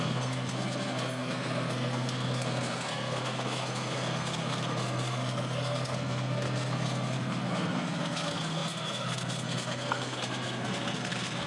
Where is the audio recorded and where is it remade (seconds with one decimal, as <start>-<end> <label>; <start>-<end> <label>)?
0.0-11.5 remade